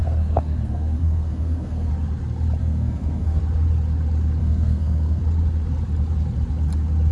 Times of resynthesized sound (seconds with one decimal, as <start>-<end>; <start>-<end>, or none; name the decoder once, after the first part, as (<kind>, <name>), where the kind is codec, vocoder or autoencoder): 0.0-1.9 (codec, SNAC); 2.6-3.4; 4.4-5.2